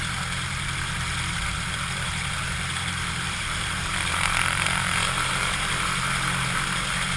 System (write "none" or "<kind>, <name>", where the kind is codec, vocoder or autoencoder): vocoder, BigVGAN v2